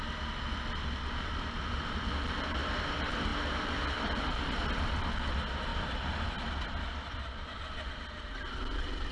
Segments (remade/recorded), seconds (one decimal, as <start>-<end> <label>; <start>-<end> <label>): 0.0-3.3 recorded; 3.3-5.0 remade; 5.0-5.7 recorded; 5.7-6.3 remade; 6.3-9.1 recorded